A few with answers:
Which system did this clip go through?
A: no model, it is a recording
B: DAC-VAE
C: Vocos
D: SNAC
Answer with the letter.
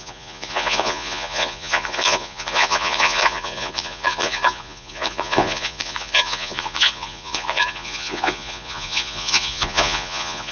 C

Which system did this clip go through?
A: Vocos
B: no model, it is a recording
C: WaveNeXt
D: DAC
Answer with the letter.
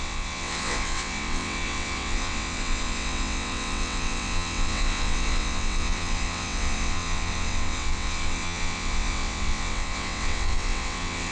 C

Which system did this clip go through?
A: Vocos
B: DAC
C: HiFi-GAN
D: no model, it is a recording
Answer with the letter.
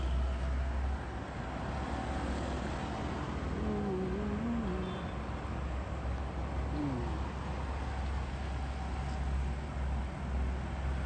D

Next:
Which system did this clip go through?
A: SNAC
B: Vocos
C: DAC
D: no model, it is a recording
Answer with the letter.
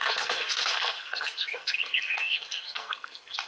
A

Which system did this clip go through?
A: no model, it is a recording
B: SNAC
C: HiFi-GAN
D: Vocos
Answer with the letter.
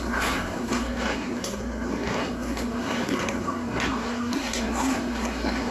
B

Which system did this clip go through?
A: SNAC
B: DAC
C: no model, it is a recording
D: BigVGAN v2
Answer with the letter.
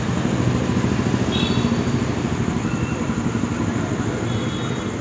C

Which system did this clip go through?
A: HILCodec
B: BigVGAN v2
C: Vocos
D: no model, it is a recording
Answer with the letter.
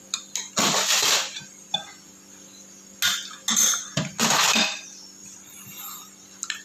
D